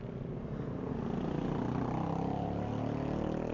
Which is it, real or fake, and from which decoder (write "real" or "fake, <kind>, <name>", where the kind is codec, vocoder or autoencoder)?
real